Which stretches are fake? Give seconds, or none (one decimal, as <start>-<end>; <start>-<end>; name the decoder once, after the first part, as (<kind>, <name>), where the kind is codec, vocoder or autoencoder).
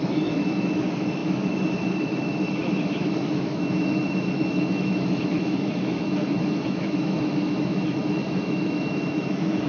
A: 0.0-9.7 (autoencoder, DAC-VAE)